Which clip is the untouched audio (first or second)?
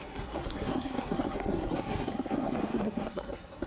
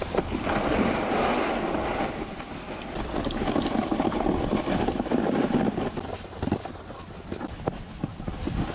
second